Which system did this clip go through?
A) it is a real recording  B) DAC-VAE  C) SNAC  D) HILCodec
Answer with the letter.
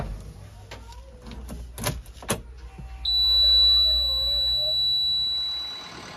A